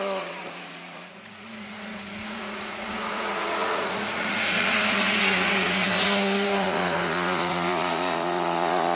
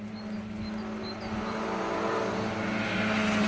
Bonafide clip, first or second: second